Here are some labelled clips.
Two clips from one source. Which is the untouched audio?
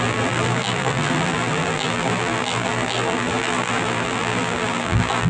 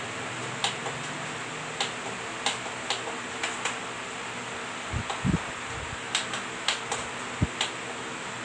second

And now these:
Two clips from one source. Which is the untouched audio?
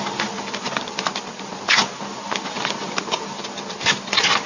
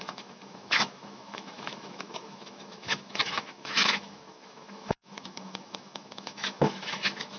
first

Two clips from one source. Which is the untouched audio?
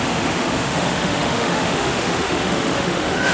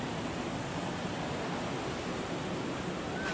second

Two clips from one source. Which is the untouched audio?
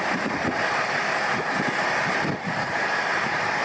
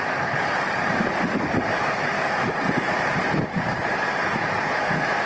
first